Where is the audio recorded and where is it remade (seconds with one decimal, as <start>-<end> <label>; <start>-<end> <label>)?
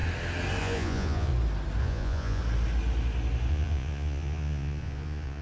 0.0-0.6 recorded; 0.6-1.3 remade; 1.3-1.8 recorded; 1.8-2.4 remade; 2.4-3.5 recorded; 3.5-5.4 remade